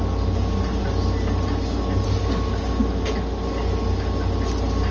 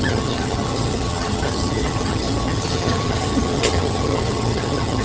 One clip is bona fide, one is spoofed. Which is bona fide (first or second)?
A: first